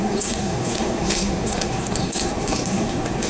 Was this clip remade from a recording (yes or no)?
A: yes